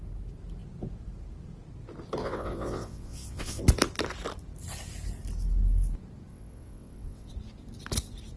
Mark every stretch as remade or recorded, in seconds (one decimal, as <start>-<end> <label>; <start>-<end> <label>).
0.0-2.2 recorded; 2.2-3.6 remade; 3.6-6.3 recorded; 6.3-7.3 remade; 7.3-8.4 recorded